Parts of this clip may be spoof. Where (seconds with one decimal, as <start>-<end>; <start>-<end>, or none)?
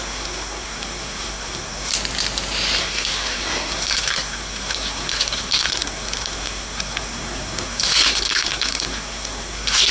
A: 0.0-1.9; 2.8-9.9